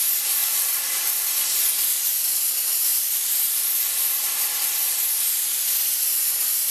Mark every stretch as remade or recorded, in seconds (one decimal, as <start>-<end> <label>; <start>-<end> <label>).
0.0-2.9 recorded; 2.9-4.6 remade; 4.6-6.7 recorded